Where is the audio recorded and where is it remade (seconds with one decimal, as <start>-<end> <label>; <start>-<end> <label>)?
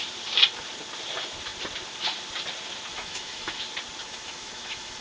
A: 0.0-2.9 recorded; 2.9-3.6 remade; 3.6-4.0 recorded; 4.0-5.0 remade